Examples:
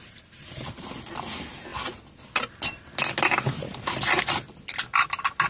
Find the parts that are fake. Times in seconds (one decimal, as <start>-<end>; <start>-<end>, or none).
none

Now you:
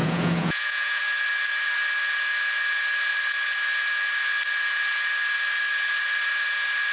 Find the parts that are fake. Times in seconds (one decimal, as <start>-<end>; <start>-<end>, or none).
0.0-1.0

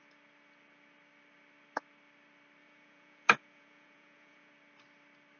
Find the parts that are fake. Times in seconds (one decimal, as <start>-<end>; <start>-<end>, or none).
2.6-4.5

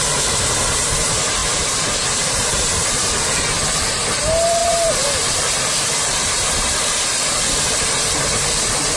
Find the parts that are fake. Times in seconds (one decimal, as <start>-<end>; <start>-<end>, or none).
0.0-9.0

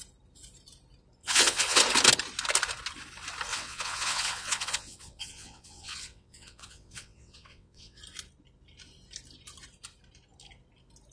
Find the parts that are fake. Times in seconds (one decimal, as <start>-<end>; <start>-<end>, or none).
1.2-1.8; 3.5-8.0